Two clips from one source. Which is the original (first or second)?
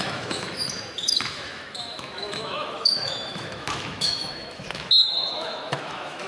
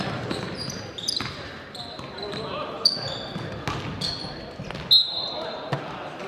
second